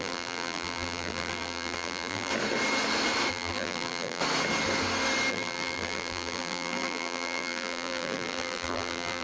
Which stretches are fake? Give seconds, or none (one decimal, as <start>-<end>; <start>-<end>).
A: 0.0-2.3; 3.3-4.2; 5.3-9.2